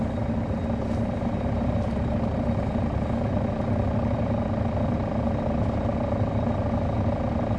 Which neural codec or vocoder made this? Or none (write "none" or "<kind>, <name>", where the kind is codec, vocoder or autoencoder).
none